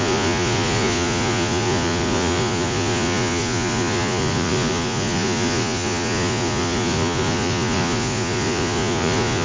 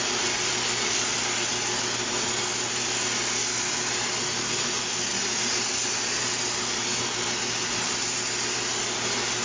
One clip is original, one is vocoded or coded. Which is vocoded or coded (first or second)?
first